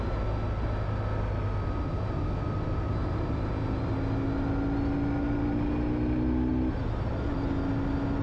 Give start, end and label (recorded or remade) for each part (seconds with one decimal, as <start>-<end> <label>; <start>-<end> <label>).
0.0-8.2 recorded